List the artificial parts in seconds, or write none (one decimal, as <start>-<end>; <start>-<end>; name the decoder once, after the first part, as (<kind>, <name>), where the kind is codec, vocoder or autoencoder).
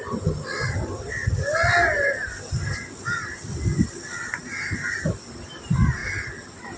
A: none